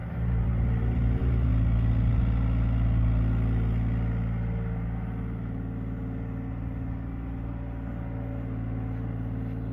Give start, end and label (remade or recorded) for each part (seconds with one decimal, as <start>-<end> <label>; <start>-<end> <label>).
0.0-1.5 remade; 1.5-9.7 recorded